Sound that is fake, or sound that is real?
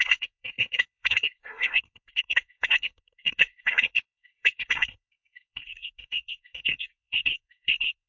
fake